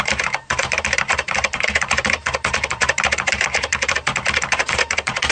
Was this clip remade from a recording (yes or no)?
yes